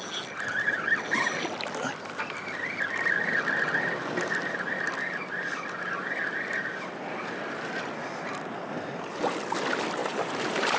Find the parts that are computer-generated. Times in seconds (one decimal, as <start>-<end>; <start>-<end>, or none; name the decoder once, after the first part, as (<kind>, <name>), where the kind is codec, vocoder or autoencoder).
10.0-10.8 (vocoder, BigVGAN v2)

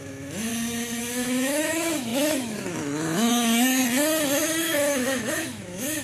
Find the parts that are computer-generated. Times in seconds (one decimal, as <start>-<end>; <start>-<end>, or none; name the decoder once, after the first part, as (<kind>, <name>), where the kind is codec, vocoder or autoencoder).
0.0-0.5 (autoencoder, DAC-VAE); 1.0-3.8; 4.6-6.0

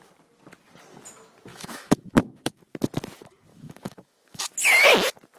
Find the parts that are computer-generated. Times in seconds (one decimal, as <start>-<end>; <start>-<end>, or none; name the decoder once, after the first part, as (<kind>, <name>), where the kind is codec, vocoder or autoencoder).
1.5-2.6 (autoencoder, DAC-VAE); 3.5-4.5

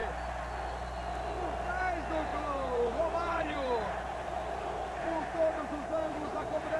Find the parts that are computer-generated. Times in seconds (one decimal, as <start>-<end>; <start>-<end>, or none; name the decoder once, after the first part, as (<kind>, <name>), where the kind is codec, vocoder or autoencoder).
2.3-6.8 (vocoder, BigVGAN v2)

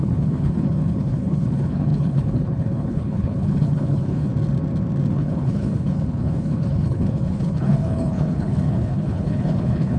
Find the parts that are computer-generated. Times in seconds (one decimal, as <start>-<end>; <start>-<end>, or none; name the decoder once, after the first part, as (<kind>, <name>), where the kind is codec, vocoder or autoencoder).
0.0-4.3 (codec, HILCodec); 5.1-10.0